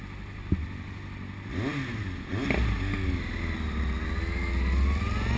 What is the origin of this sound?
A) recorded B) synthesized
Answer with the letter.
A